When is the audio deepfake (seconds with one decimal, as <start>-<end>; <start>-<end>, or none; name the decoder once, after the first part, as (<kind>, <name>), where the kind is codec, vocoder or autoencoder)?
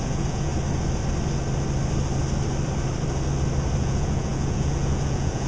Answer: 0.0-0.5 (vocoder, Vocos); 3.8-5.5